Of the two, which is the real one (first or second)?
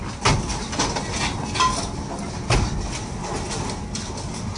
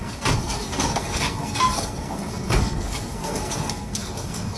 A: first